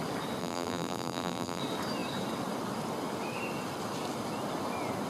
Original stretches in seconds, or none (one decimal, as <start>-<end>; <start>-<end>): 0.0-0.4; 1.6-5.1